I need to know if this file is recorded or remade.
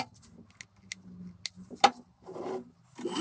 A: recorded